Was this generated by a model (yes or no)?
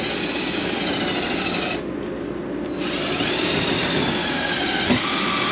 no